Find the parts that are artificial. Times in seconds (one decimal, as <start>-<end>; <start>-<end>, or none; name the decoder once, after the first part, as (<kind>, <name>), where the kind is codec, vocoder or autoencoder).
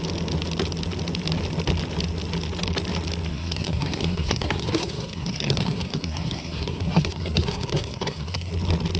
3.3-8.5 (codec, SNAC)